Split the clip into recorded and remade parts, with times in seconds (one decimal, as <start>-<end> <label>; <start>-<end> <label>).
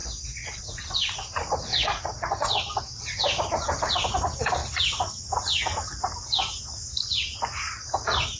0.0-0.6 remade; 0.6-1.7 recorded; 1.7-2.6 remade; 2.6-8.4 recorded